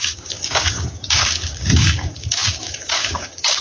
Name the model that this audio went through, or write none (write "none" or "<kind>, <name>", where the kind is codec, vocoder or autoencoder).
codec, DAC